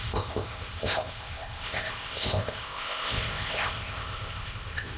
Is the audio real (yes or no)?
no